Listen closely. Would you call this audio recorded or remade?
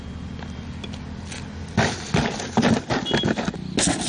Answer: recorded